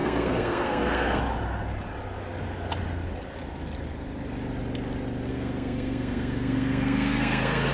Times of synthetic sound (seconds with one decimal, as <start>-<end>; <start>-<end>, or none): 0.0-1.2; 5.3-7.7